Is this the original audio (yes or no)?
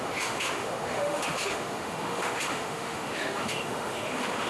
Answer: no